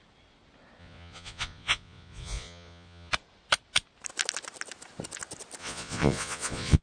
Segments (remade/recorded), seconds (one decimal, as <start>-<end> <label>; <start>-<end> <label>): 0.0-0.8 recorded; 0.8-3.1 remade; 3.1-5.6 recorded; 5.6-6.8 remade

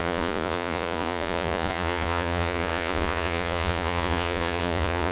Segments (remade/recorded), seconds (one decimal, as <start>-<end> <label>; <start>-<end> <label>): 0.0-5.1 remade

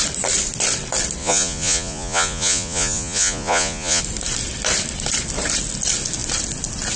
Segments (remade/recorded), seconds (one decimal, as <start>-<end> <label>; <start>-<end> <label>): 0.0-1.2 recorded; 1.2-4.0 remade; 4.0-7.0 recorded

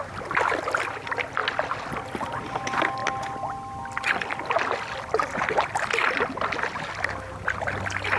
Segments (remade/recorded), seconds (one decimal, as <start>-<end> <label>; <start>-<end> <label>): 0.0-8.2 recorded

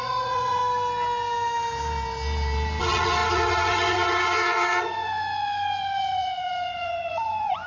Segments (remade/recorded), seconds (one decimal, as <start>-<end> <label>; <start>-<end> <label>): 0.0-0.6 remade; 0.6-2.8 recorded; 2.8-7.7 remade

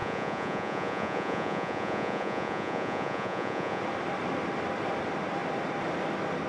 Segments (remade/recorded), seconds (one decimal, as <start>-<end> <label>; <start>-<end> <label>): 0.0-3.8 remade; 3.8-6.5 recorded

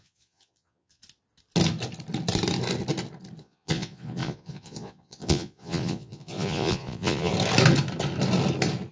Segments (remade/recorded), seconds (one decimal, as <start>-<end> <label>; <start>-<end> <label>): 0.0-1.0 remade; 1.0-3.4 recorded; 3.4-7.3 remade; 7.3-8.9 recorded